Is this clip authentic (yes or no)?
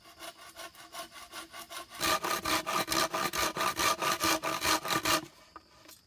yes